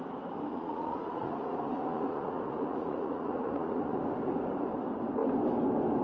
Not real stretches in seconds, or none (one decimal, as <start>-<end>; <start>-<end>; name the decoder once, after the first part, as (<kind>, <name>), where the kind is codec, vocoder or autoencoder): 0.5-4.0 (vocoder, Vocos)